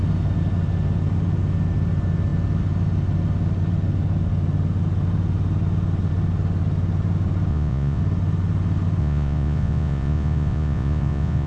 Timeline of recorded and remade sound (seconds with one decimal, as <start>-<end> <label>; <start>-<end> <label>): 0.0-7.5 recorded; 7.5-8.0 remade; 8.0-9.0 recorded; 9.0-11.5 remade